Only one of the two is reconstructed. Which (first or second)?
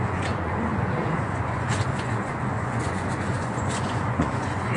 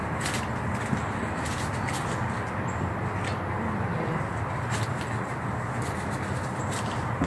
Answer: first